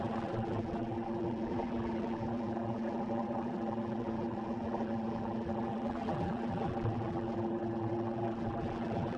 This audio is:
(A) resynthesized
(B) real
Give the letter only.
A